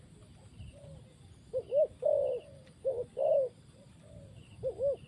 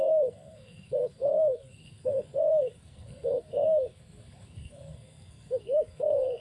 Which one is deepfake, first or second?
second